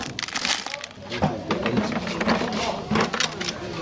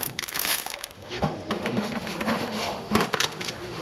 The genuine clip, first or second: first